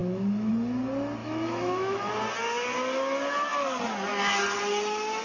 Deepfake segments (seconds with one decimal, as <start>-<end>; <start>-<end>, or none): 0.0-0.5; 1.2-2.1